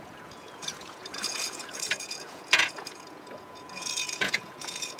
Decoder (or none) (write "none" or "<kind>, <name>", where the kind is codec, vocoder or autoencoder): vocoder, Vocos